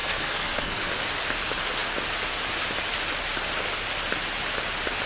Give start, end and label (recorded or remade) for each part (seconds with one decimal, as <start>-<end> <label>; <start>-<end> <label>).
0.0-0.9 remade; 0.9-5.1 recorded